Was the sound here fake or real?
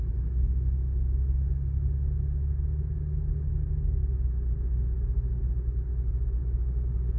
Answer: real